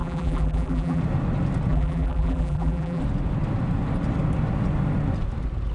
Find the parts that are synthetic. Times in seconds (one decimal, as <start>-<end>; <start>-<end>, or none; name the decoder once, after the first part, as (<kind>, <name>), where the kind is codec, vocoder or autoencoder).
0.0-1.0 (vocoder, BigVGAN v2); 1.7-3.0